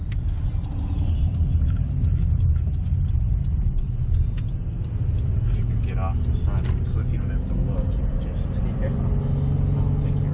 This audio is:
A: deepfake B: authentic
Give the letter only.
B